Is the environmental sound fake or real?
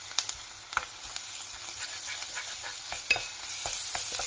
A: real